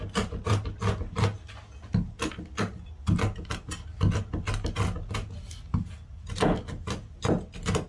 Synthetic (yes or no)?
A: no